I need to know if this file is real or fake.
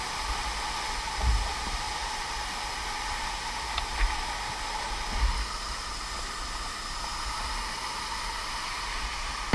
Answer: real